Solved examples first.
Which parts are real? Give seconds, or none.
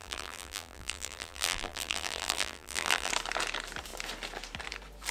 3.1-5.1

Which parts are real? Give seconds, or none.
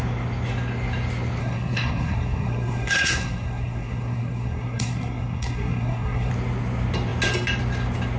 0.0-1.4; 6.3-8.2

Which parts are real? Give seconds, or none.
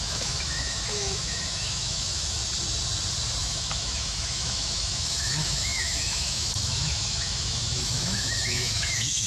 2.4-3.4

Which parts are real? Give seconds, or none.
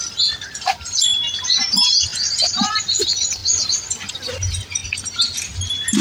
2.1-2.7; 4.8-6.0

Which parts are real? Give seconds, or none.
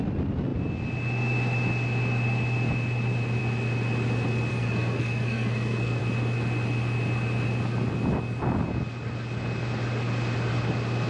0.0-4.5; 6.0-11.1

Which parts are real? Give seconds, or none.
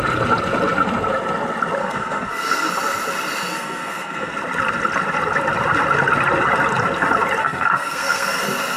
0.0-1.8; 2.7-3.5; 4.3-7.4; 8.4-8.8